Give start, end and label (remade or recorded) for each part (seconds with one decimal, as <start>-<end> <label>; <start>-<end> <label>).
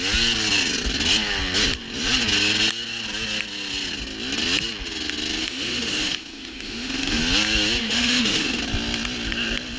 0.0-5.4 recorded; 5.4-7.2 remade; 7.2-7.8 recorded; 7.8-8.6 remade; 8.6-9.8 recorded